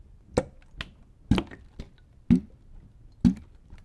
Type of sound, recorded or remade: recorded